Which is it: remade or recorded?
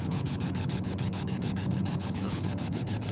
remade